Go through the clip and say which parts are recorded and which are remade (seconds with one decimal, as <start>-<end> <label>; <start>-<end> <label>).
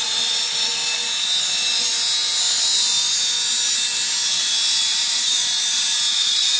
0.0-0.8 remade; 0.8-4.8 recorded; 4.8-5.4 remade; 5.4-6.1 recorded; 6.1-6.6 remade